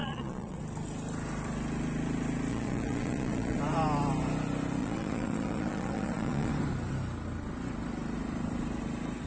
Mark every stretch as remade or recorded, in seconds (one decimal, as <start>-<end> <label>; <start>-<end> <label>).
0.0-0.6 remade; 0.6-2.5 recorded; 2.5-3.6 remade; 3.6-4.8 recorded; 4.8-6.5 remade; 6.5-9.3 recorded